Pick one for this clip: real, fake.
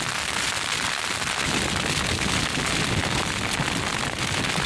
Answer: real